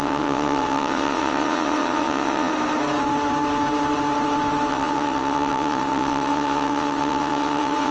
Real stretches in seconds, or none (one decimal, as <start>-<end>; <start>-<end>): 2.5-4.7